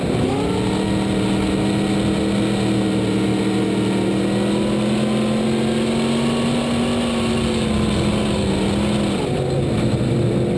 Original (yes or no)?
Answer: yes